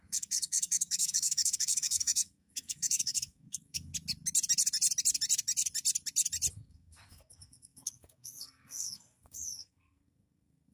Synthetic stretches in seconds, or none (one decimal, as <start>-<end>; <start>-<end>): 0.0-3.9; 6.5-10.7